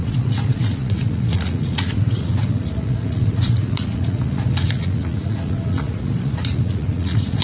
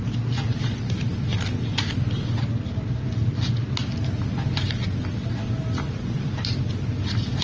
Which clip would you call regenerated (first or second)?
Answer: first